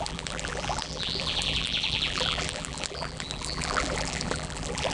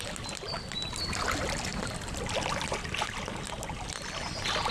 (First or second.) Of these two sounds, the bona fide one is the second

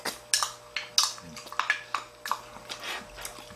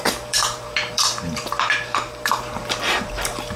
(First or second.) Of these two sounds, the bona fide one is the first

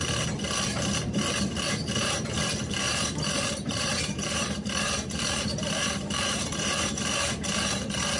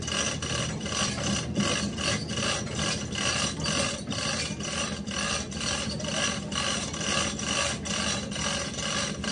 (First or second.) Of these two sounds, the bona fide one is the second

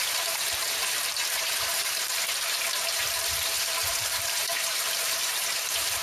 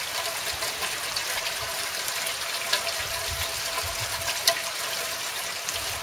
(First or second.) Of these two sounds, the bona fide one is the second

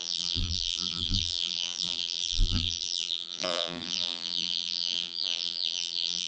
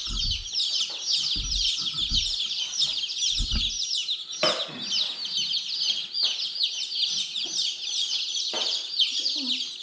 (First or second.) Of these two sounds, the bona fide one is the second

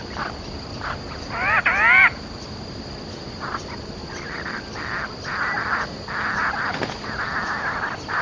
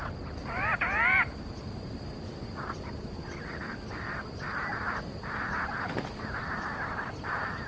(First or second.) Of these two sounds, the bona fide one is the first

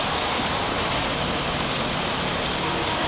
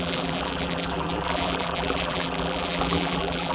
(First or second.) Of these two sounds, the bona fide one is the first